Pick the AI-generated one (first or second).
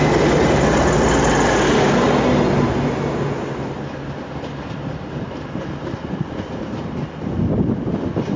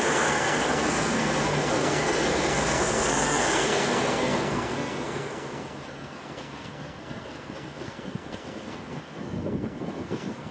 second